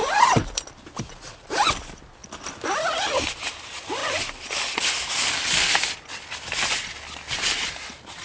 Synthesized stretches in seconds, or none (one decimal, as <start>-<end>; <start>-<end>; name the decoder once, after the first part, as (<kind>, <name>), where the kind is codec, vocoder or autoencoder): none